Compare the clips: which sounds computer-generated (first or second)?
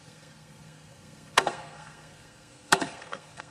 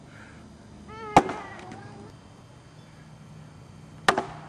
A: first